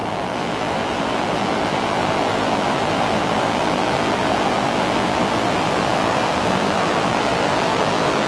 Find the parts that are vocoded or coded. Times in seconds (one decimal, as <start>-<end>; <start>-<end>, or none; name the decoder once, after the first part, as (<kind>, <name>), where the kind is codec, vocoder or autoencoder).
0.0-8.3 (vocoder, BigVGAN v2)